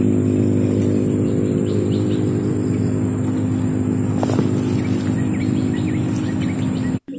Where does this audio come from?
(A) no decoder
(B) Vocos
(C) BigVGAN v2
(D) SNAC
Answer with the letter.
A